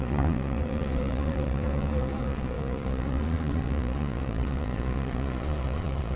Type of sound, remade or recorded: remade